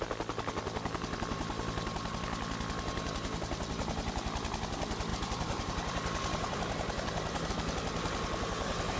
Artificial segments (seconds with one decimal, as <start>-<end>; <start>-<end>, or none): 5.1-7.5

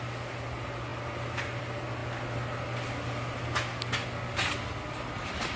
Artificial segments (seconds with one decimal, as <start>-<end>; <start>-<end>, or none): none